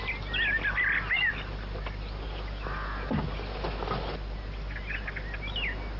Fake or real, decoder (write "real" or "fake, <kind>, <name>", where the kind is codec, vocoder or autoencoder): real